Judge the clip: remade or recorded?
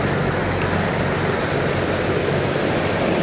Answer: recorded